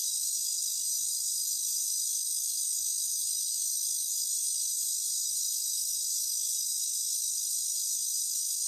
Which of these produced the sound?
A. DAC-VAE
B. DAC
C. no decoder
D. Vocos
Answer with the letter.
B